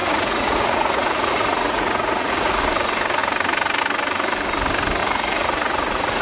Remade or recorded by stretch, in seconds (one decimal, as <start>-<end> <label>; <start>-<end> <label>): 0.0-2.6 remade; 2.6-5.0 recorded; 5.0-6.2 remade